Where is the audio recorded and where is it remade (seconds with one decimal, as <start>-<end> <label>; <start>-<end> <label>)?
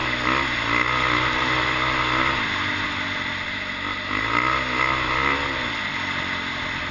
0.0-6.9 recorded